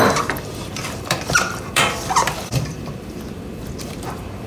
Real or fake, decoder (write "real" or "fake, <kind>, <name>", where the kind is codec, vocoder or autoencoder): fake, vocoder, BigVGAN v2